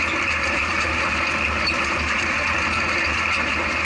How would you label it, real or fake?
fake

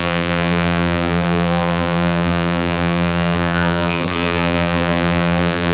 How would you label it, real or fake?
fake